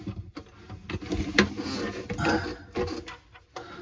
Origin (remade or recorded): recorded